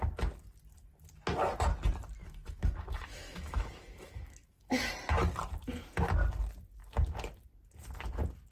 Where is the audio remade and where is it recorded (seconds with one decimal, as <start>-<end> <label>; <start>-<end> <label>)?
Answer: 0.0-2.2 recorded; 2.2-4.9 remade; 4.9-8.5 recorded